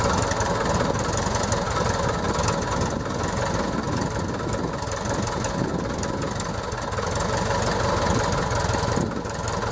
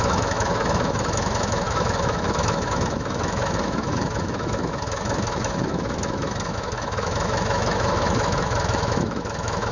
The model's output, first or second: second